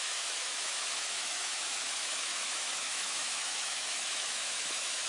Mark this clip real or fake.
fake